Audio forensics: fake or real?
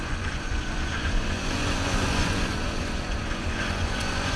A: fake